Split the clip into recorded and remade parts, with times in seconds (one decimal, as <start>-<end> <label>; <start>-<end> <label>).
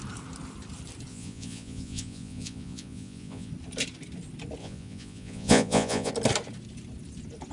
0.0-1.1 recorded; 1.1-3.5 remade; 3.5-4.6 recorded; 4.6-6.1 remade; 6.1-7.5 recorded